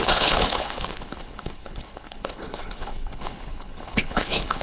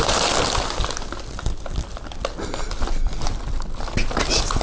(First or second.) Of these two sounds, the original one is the second